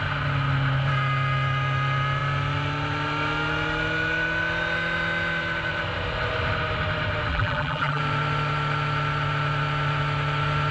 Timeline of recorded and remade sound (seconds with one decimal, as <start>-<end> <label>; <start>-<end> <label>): 0.0-7.3 recorded; 7.3-8.0 remade; 8.0-10.7 recorded